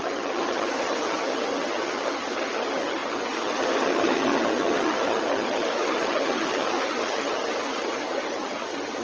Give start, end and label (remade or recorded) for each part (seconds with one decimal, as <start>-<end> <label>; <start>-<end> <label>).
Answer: 0.0-9.0 remade